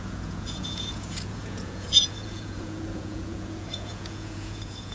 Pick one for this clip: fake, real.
fake